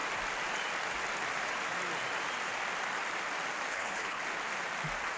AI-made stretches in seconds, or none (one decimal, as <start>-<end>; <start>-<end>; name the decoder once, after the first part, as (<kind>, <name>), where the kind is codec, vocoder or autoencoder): 3.7-4.2 (codec, HILCodec)